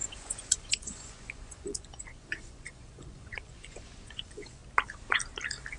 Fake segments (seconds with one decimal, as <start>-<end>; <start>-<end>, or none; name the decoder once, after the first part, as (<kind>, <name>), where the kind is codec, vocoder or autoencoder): 0.0-4.6 (vocoder, Vocos)